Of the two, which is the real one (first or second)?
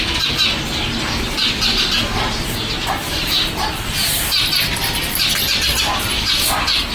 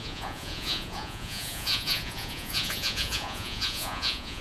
first